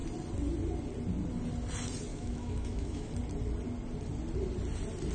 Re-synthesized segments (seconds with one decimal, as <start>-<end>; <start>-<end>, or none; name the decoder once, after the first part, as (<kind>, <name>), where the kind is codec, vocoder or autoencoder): 2.1-3.1 (autoencoder, DAC-VAE)